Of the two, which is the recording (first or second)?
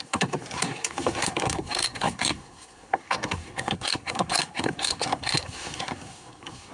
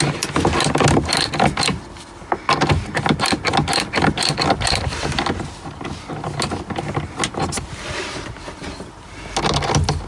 second